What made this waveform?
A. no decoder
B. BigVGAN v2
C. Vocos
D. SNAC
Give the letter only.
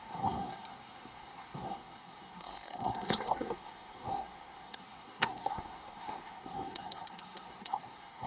D